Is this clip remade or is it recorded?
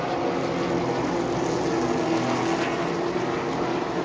recorded